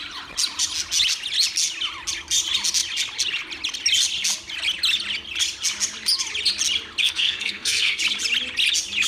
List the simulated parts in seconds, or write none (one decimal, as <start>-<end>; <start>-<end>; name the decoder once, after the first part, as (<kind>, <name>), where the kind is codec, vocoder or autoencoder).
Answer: 7.0-8.0 (codec, SNAC)